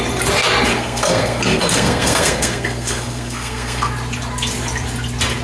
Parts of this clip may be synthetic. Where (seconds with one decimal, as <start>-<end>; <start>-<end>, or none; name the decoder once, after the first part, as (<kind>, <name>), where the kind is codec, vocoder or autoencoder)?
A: 0.7-3.9 (codec, SNAC)